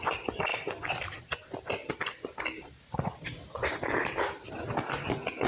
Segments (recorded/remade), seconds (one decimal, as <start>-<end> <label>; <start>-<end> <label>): 0.0-5.5 recorded